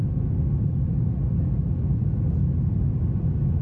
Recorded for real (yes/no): yes